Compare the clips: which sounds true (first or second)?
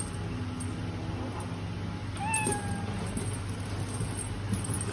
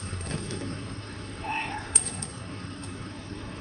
first